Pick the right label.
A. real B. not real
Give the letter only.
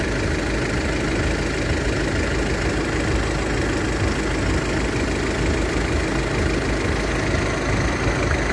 A